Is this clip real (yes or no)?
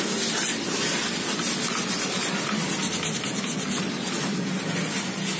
yes